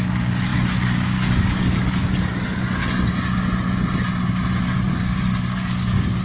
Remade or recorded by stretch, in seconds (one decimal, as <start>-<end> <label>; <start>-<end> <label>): 0.0-2.8 remade; 2.8-4.6 recorded; 4.6-6.2 remade